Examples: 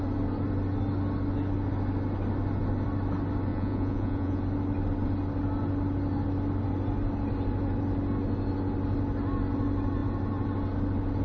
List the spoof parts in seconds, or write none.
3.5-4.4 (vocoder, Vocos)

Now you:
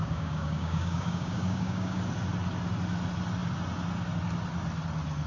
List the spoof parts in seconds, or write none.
0.0-2.0 (codec, DAC)

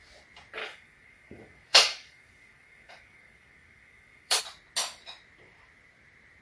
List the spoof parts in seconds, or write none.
0.6-4.4 (codec, DAC)

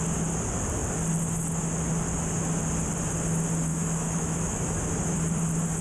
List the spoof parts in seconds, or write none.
3.7-4.9 (autoencoder, DAC-VAE)

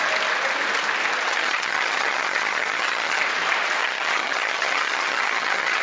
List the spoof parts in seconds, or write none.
1.3-3.2 (vocoder, HiFi-GAN); 3.8-5.8

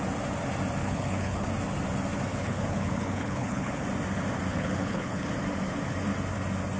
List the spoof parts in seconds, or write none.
0.8-1.5 (codec, HILCodec); 2.3-3.8; 4.5-5.3

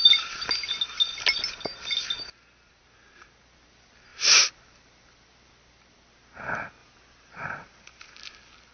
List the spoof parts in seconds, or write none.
4.1-5.5 (vocoder, BigVGAN v2); 6.8-8.2